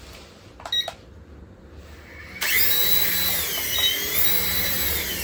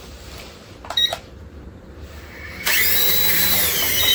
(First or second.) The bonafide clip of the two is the first